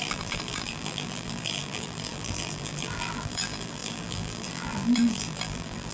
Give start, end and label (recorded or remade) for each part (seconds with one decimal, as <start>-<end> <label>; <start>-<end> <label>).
0.0-5.9 remade